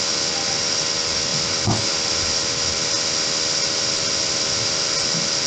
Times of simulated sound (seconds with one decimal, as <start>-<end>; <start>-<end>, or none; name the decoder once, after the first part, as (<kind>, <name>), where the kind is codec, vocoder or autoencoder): none